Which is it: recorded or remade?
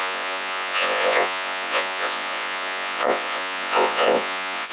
remade